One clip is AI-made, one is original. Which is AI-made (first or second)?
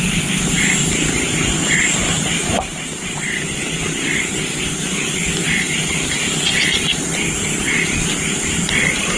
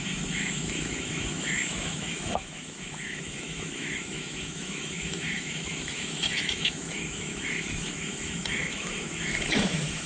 second